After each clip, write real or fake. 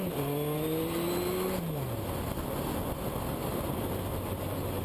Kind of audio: real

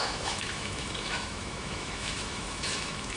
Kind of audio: fake